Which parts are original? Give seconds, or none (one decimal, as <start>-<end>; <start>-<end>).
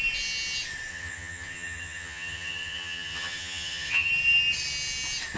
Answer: 0.0-0.9; 4.1-5.4